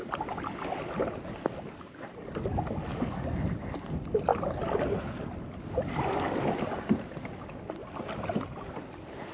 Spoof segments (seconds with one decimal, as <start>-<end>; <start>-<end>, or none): none